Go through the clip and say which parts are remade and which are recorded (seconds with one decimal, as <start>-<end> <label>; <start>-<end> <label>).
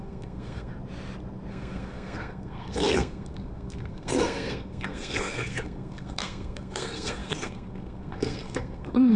0.0-0.7 remade; 0.7-1.5 recorded; 1.5-9.2 remade